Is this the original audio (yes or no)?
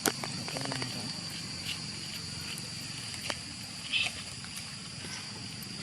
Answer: yes